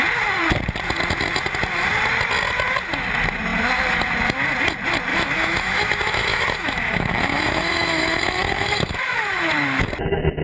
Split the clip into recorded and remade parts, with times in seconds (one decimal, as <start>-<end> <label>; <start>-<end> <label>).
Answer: 0.0-5.1 recorded; 5.1-9.9 remade; 9.9-10.4 recorded